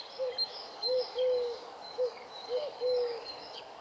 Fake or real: fake